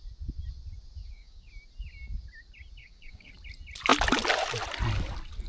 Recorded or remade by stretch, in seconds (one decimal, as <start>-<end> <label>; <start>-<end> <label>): 0.0-1.0 recorded; 1.0-1.5 remade; 1.5-2.8 recorded; 2.8-3.3 remade; 3.3-5.5 recorded